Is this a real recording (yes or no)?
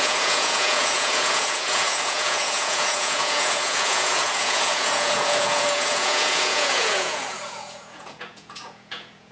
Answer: no